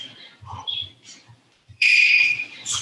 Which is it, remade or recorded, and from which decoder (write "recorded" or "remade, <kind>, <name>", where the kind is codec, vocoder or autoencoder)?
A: remade, vocoder, BigVGAN v2